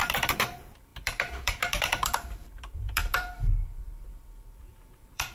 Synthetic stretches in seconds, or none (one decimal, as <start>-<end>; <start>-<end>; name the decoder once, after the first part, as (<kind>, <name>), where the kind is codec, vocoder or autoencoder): 0.0-5.3 (vocoder, BigVGAN v2)